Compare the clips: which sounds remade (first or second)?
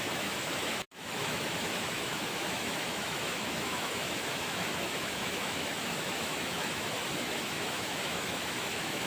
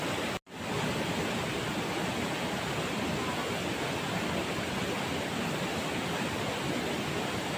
first